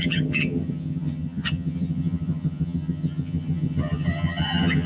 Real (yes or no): no